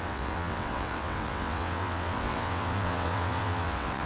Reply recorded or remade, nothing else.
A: remade